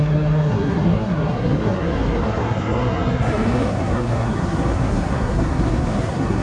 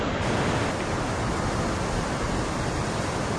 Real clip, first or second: second